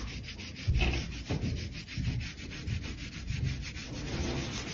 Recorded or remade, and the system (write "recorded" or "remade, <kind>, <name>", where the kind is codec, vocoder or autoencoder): recorded